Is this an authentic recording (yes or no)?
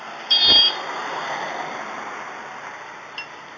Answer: yes